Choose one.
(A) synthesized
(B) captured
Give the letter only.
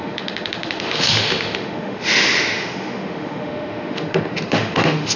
A